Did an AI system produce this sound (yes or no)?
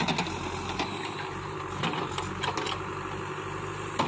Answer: no